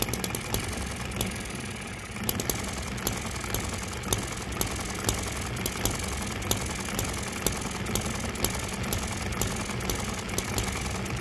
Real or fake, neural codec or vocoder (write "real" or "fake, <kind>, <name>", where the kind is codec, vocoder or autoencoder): real